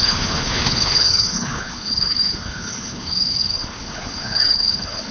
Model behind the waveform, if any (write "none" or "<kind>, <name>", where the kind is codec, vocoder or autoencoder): codec, HILCodec